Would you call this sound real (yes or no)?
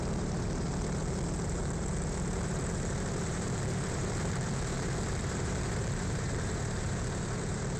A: no